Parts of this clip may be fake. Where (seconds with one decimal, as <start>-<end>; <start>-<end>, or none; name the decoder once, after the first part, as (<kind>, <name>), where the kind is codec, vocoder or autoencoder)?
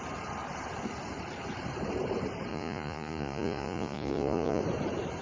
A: 2.5-4.6 (vocoder, Vocos)